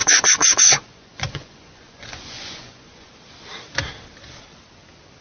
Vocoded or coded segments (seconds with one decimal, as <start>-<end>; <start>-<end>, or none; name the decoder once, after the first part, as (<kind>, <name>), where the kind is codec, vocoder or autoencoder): 0.0-3.1 (vocoder, Vocos)